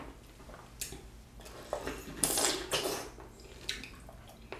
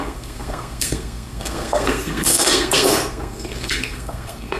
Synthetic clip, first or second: second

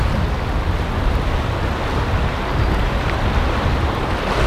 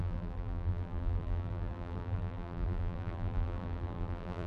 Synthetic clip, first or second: second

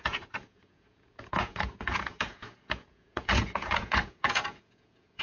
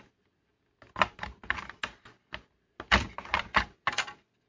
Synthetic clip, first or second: first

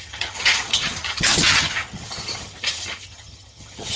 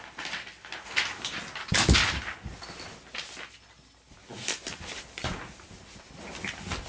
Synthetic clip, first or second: first